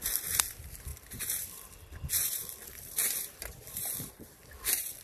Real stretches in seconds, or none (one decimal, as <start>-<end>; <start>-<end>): none